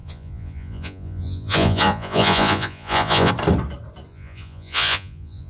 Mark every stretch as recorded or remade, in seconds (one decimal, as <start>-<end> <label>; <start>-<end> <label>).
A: 0.0-3.3 remade; 3.3-4.1 recorded; 4.1-5.5 remade